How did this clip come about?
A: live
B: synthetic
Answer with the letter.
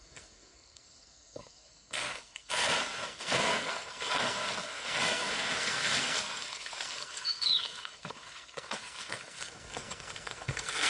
B